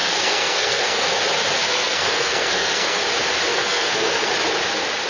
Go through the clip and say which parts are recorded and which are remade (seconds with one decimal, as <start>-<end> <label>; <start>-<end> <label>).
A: 0.0-1.2 remade; 1.2-1.6 recorded; 1.6-3.0 remade; 3.0-3.5 recorded; 3.5-4.3 remade; 4.3-5.1 recorded